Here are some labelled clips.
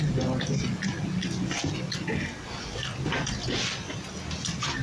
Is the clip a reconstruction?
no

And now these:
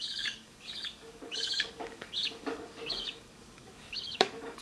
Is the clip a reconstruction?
yes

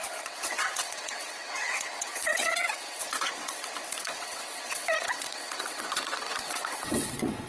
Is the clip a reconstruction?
yes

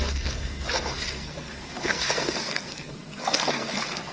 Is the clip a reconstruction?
yes